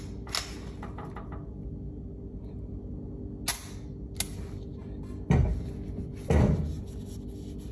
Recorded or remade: recorded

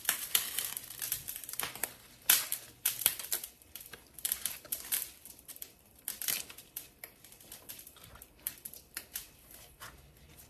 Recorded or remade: remade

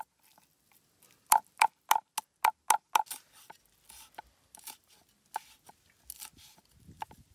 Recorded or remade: recorded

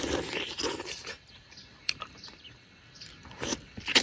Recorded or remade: remade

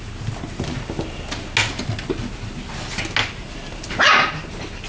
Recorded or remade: recorded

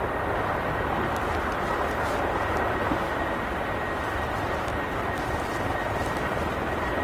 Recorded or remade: recorded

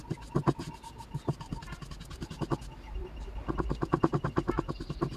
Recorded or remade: recorded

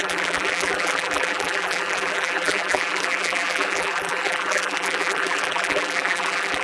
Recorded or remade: remade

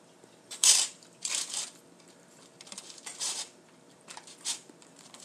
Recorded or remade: remade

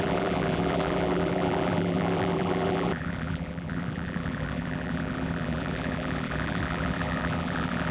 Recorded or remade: remade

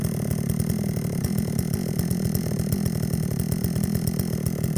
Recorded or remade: recorded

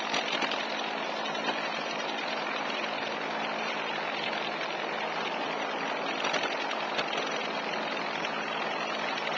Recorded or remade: recorded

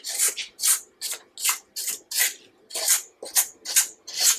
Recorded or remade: recorded